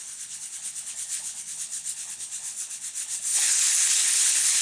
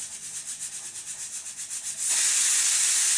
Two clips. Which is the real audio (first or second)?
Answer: second